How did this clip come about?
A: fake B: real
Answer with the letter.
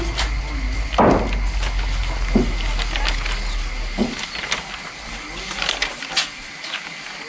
B